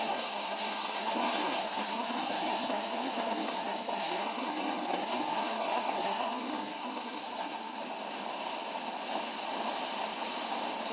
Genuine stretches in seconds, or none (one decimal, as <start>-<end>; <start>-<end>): 7.8-10.9